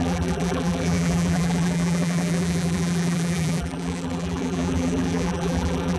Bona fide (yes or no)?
no